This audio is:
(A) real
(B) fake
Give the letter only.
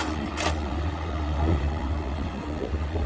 B